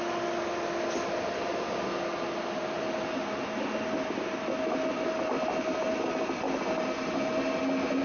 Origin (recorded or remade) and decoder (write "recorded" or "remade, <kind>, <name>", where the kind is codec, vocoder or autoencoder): recorded